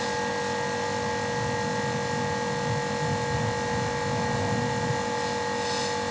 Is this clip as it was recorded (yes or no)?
yes